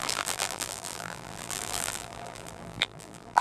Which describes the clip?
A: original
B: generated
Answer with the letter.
B